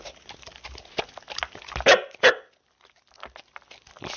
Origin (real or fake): real